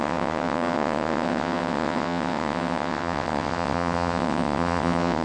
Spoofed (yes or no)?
yes